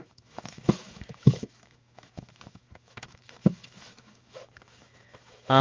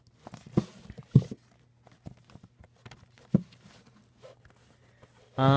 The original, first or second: second